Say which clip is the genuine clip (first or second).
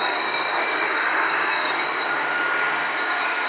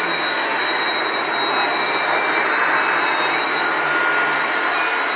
second